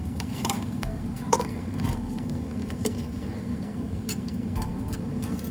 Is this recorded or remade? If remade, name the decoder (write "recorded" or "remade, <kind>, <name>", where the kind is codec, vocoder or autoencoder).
remade, codec, SNAC